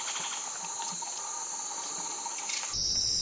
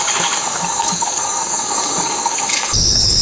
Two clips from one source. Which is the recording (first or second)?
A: first